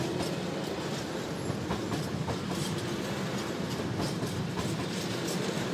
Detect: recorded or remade recorded